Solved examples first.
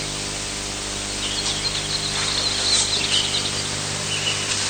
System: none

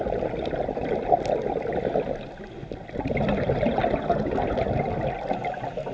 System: none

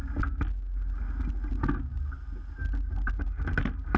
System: none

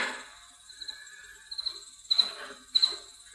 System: none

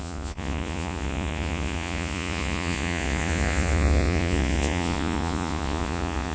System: vocoder, Vocos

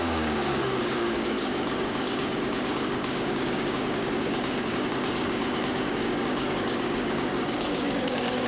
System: codec, DAC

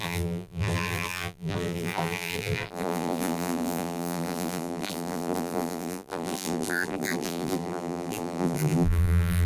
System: vocoder, BigVGAN v2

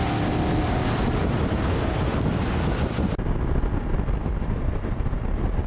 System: none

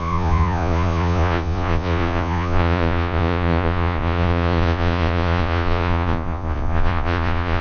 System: vocoder, Vocos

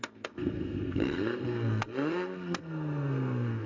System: codec, SNAC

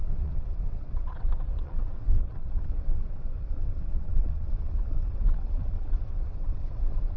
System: vocoder, WaveNeXt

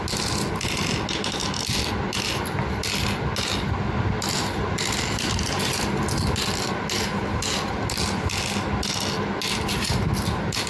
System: none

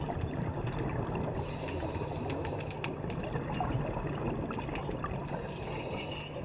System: none